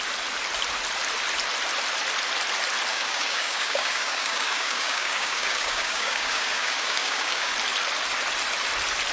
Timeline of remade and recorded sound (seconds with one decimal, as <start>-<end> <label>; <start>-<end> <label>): 0.0-2.9 recorded; 2.9-7.5 remade; 7.5-9.1 recorded

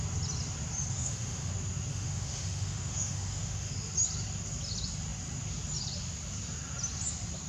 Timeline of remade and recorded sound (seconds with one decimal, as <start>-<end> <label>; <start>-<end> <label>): 0.0-0.9 recorded; 0.9-1.5 remade; 1.5-1.9 recorded; 1.9-3.7 remade; 3.7-7.5 recorded